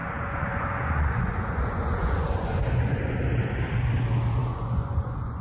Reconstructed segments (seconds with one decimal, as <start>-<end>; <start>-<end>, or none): 0.0-3.2; 4.4-5.4